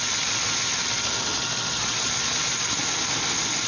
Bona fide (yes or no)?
yes